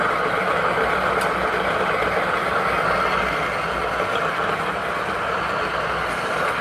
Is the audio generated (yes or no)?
no